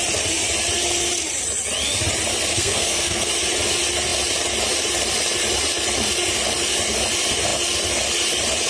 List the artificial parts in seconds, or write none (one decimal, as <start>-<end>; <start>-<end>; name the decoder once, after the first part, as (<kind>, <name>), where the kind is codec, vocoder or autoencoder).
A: 2.5-3.3 (codec, SNAC)